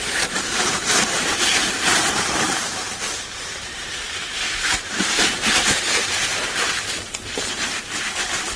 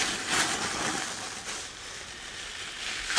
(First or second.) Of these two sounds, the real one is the second